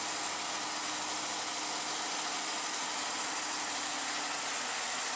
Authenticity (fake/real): real